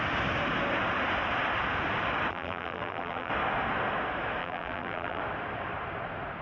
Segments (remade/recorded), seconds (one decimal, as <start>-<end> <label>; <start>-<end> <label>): 0.0-2.3 recorded; 2.3-3.3 remade; 3.3-4.4 recorded; 4.4-5.2 remade; 5.2-6.4 recorded